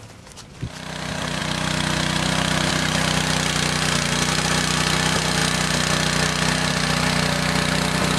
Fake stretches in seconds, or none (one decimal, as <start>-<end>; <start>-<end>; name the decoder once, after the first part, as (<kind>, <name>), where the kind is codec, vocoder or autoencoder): none